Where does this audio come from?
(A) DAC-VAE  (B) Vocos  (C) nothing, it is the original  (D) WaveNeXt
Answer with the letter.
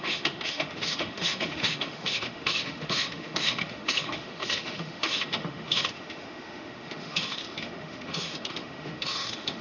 A